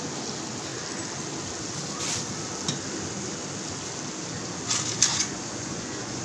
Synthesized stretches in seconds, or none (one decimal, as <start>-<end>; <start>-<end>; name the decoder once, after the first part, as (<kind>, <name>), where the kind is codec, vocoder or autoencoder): 5.1-6.2 (vocoder, Vocos)